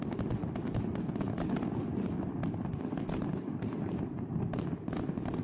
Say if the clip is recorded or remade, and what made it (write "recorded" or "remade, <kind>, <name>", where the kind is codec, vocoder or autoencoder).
recorded